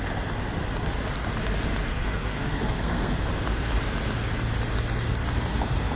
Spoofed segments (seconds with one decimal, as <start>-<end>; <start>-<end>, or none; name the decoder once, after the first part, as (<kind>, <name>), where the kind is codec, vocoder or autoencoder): 1.9-3.3 (codec, SNAC)